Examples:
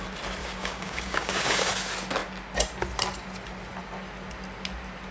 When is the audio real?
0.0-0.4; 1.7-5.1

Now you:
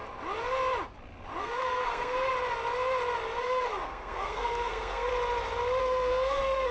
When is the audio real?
0.0-1.4; 2.3-3.4; 5.1-5.8

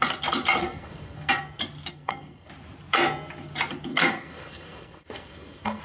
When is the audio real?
0.0-0.6; 1.3-1.9; 2.5-3.9

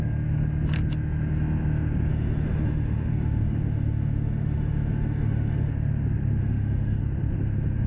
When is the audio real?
0.0-2.1; 5.7-6.4; 7.0-7.9

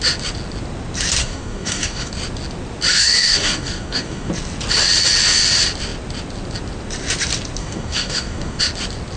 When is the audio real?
0.0-1.2; 2.1-2.9; 4.3-7.6; 8.6-9.2

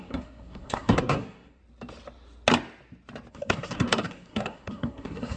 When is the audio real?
1.6-3.3

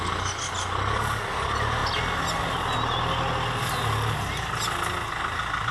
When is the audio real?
0.0-5.7

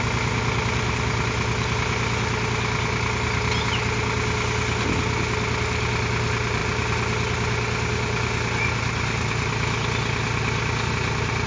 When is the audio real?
0.0-11.5